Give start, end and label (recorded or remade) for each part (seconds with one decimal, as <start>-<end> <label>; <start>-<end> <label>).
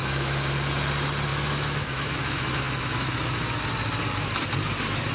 0.0-0.5 remade; 0.5-1.3 recorded; 1.3-3.6 remade; 3.6-5.1 recorded